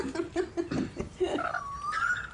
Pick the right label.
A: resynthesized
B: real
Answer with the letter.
B